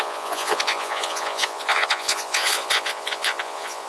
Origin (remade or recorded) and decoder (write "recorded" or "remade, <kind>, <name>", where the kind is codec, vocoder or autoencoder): remade, vocoder, Vocos